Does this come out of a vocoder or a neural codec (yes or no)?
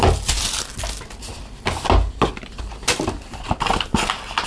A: no